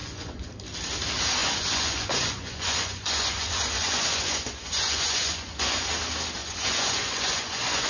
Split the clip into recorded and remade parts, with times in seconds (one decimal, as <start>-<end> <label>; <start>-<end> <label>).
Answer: 0.0-0.5 remade; 0.5-1.4 recorded; 1.4-5.9 remade; 5.9-6.4 recorded; 6.4-7.9 remade